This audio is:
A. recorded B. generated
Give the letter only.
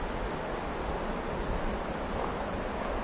A